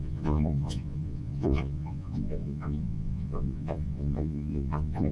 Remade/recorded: remade